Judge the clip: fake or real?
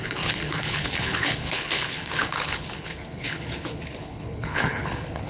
fake